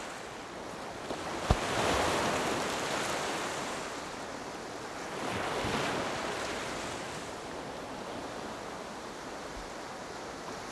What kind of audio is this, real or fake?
real